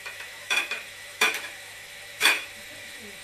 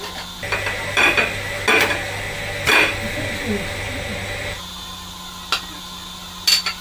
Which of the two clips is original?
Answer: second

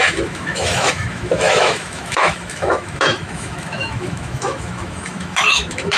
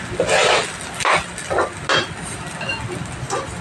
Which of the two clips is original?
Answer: second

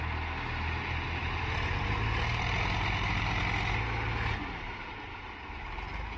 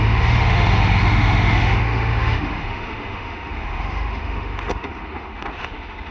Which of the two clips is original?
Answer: first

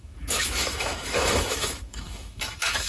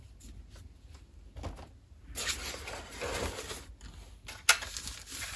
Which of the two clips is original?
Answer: second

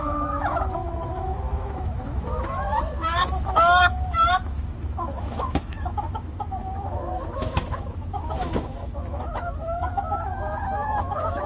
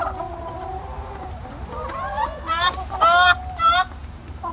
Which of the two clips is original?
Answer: second